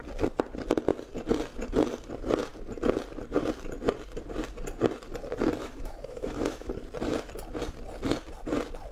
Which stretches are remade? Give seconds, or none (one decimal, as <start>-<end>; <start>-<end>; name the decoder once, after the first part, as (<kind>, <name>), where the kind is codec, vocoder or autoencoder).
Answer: 5.6-6.7 (autoencoder, DAC-VAE)